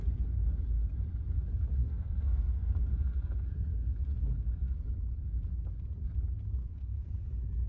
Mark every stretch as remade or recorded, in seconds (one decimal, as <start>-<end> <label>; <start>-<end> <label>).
0.0-1.8 recorded; 1.8-2.7 remade; 2.7-6.6 recorded; 6.6-7.1 remade; 7.1-7.7 recorded

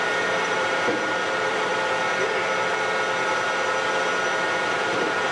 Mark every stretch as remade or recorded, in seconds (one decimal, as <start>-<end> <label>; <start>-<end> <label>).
0.0-1.7 remade; 1.7-4.7 recorded; 4.7-5.3 remade

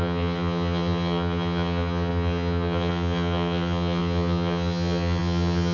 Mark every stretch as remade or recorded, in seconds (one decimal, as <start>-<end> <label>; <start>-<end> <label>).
0.0-5.7 remade

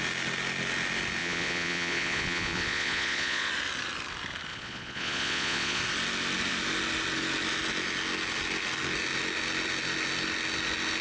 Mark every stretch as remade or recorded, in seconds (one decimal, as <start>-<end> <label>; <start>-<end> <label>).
0.0-1.2 recorded; 1.2-3.5 remade; 3.5-4.5 recorded; 4.5-5.8 remade; 5.8-11.0 recorded

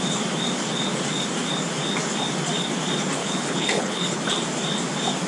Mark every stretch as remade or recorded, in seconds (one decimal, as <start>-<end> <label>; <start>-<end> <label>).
0.0-3.2 recorded; 3.2-4.2 remade; 4.2-5.3 recorded

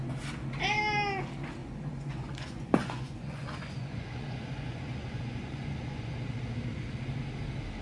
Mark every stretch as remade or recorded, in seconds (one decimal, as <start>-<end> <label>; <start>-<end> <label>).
0.0-1.6 recorded; 1.6-6.1 remade; 6.1-7.8 recorded